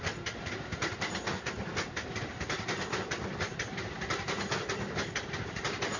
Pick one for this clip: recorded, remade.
recorded